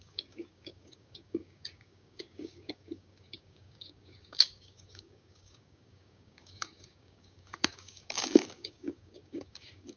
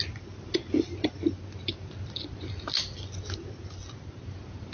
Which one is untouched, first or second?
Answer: second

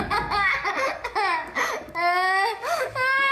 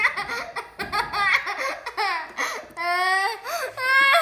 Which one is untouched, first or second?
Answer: second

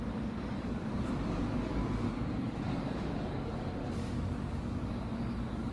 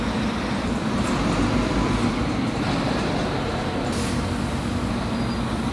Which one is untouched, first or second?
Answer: second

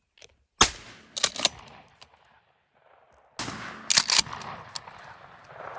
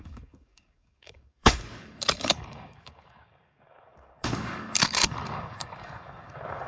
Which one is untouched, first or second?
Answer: first